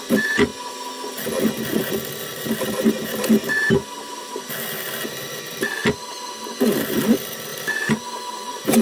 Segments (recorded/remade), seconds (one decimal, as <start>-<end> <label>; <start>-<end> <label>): 0.0-0.5 remade; 0.5-1.8 recorded; 1.8-5.8 remade; 5.8-6.7 recorded; 6.7-7.5 remade; 7.5-8.8 recorded